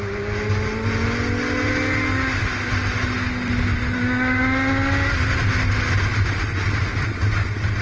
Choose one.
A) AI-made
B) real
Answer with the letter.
B